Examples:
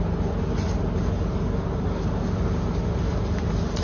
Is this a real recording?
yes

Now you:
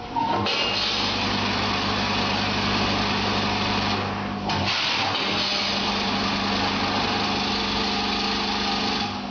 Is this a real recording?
yes